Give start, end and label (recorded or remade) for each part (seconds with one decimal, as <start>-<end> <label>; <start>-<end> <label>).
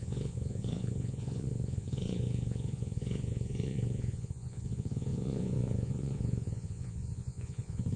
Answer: 0.0-8.0 remade